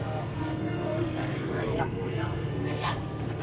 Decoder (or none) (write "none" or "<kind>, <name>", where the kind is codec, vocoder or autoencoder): codec, SNAC